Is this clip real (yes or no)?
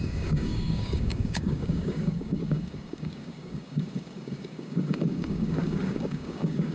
no